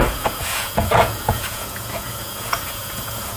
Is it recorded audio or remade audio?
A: remade